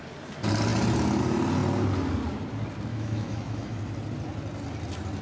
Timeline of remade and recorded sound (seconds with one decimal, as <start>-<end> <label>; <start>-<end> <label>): 0.0-2.9 recorded; 2.9-3.8 remade; 3.8-5.2 recorded